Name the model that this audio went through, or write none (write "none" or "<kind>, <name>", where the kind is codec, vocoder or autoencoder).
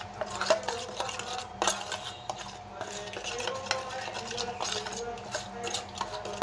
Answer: none